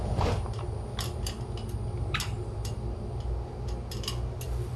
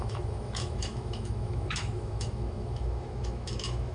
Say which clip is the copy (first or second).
second